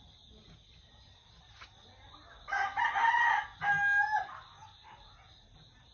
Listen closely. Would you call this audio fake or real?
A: real